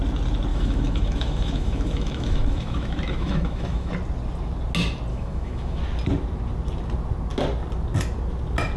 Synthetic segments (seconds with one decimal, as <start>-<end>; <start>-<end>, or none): 0.5-3.9; 5.1-5.8